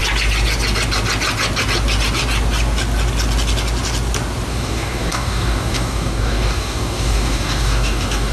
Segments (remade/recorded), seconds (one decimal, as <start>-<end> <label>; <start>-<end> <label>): 0.0-4.5 recorded; 4.5-8.3 remade